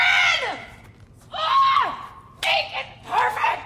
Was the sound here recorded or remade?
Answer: recorded